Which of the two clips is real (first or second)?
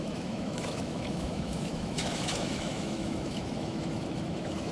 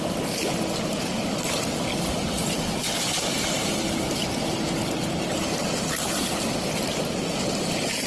second